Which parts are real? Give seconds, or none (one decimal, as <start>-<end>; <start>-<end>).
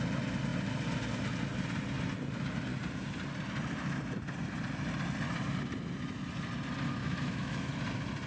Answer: 0.0-7.0; 7.7-8.3